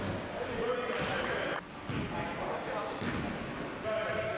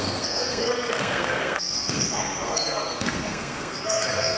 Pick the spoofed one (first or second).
second